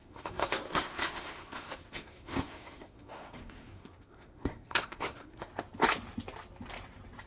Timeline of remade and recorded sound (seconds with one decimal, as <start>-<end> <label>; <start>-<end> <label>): 0.0-5.5 remade; 5.5-7.3 recorded